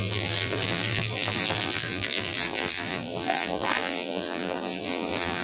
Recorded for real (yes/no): no